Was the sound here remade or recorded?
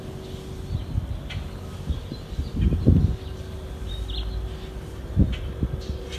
recorded